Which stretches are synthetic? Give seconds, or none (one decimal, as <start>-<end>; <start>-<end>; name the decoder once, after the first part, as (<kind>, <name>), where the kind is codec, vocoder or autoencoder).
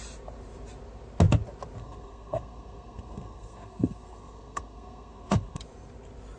1.8-5.6 (codec, SNAC)